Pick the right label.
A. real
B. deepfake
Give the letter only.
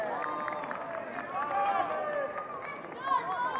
A